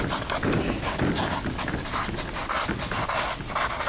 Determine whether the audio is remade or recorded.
recorded